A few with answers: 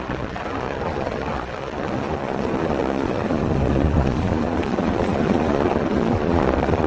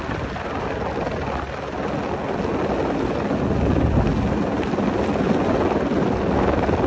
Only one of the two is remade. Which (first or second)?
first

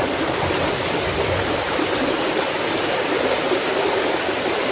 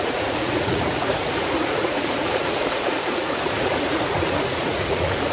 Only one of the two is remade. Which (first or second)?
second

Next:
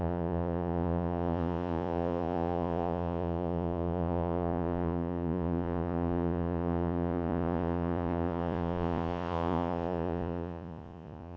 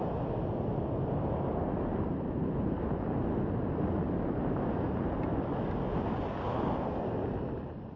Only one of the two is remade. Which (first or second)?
first